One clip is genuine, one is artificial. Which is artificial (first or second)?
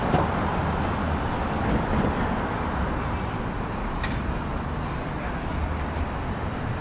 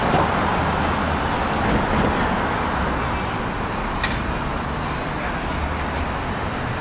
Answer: first